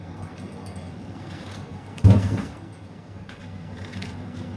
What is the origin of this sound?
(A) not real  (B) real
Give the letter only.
A